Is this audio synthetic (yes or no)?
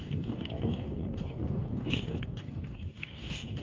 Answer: yes